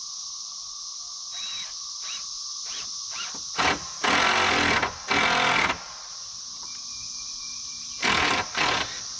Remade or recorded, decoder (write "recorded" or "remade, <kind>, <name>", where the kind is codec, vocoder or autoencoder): recorded